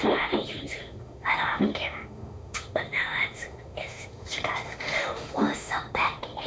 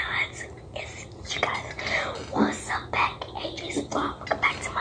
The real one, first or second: second